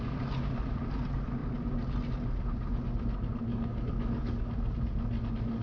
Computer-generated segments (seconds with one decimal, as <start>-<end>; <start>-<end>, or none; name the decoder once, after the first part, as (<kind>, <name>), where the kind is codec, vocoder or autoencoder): 3.5-4.5 (codec, DAC)